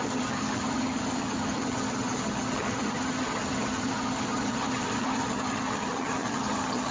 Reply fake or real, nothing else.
fake